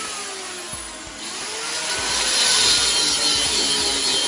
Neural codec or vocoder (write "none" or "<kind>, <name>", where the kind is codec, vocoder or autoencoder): none